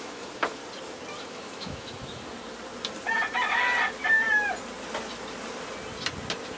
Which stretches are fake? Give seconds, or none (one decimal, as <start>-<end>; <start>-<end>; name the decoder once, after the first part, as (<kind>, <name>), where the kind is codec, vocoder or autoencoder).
0.0-0.6 (autoencoder, DAC-VAE); 1.2-2.2